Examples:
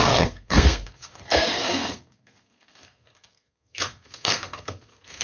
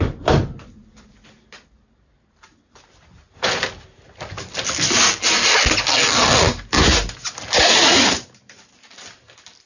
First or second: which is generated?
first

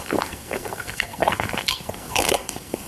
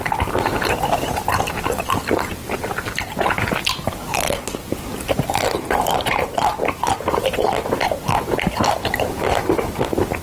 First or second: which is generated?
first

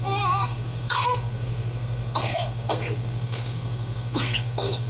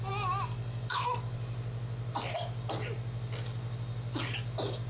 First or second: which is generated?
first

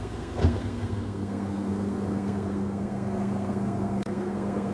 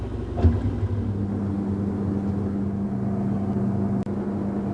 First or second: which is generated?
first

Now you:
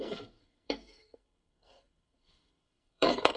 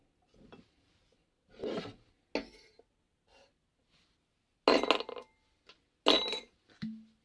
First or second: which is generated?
first